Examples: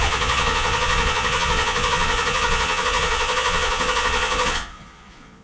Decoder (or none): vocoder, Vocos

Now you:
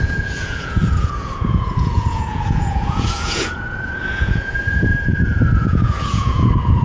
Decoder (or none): vocoder, Vocos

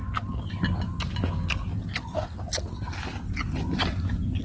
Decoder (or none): none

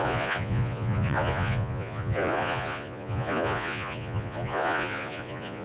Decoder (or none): vocoder, Vocos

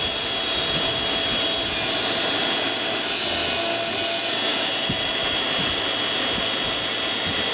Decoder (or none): none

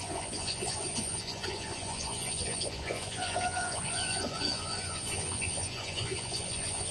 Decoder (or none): vocoder, Vocos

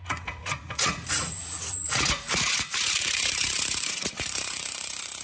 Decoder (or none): vocoder, Vocos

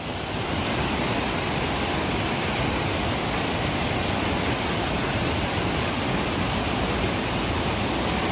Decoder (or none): none